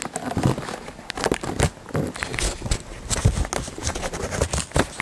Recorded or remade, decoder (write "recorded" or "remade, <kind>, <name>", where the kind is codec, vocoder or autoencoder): recorded